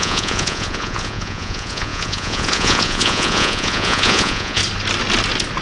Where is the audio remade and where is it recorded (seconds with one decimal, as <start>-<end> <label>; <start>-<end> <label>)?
0.0-4.6 remade; 4.6-5.6 recorded